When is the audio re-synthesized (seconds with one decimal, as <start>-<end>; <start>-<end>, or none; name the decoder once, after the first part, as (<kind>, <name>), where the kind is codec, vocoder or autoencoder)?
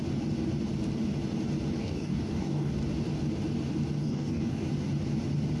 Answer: 1.8-2.7 (codec, DAC); 4.0-4.7